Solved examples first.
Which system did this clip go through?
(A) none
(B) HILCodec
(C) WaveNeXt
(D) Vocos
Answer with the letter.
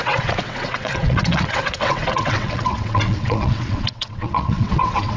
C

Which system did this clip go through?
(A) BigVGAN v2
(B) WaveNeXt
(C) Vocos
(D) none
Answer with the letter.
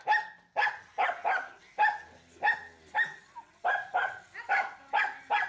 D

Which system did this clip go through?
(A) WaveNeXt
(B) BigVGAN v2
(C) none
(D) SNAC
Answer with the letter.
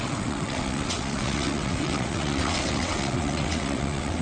A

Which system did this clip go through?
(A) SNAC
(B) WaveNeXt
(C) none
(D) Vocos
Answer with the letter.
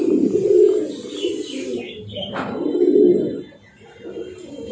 C